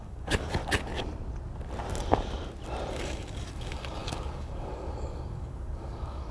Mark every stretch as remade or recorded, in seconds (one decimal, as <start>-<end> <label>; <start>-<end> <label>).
0.0-0.6 remade; 0.6-2.9 recorded; 2.9-6.3 remade

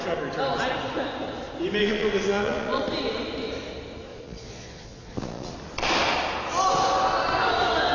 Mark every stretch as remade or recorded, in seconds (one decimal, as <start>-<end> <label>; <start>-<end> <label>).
0.0-1.8 recorded; 1.8-2.8 remade; 2.8-4.1 recorded; 4.1-5.5 remade; 5.5-7.9 recorded